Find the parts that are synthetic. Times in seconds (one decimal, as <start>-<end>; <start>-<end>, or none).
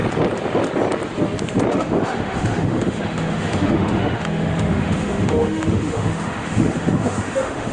1.7-7.7